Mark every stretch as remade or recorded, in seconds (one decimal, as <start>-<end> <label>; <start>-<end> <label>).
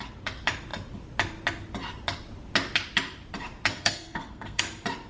0.0-3.7 recorded; 3.7-4.6 remade; 4.6-5.1 recorded